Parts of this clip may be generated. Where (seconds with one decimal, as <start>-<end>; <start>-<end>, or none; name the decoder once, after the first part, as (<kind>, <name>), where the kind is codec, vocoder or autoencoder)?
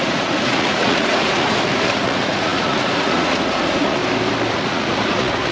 0.0-4.0 (vocoder, Vocos); 4.5-5.5